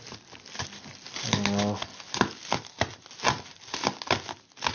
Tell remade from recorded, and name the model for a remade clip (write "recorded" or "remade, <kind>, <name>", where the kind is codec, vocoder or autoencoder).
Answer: recorded